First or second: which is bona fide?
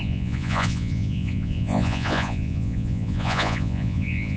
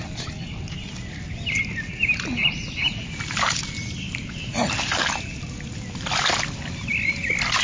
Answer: second